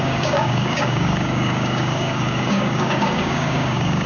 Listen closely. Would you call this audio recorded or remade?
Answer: remade